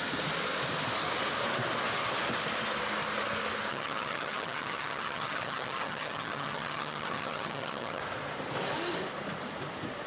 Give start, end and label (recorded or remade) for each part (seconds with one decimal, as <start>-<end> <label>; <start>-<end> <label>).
0.0-3.7 recorded; 3.7-8.0 remade; 8.0-10.1 recorded